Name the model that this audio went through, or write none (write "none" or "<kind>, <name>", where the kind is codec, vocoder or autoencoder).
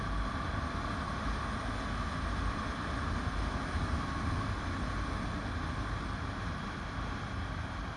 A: none